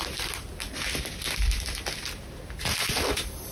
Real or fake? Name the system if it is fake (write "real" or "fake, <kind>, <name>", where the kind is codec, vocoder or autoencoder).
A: real